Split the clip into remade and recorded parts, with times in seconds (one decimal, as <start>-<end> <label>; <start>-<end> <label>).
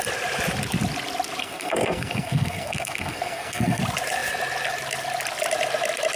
0.0-1.4 recorded; 1.4-3.8 remade; 3.8-6.2 recorded